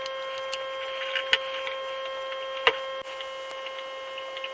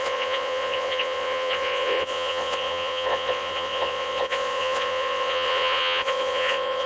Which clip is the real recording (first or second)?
first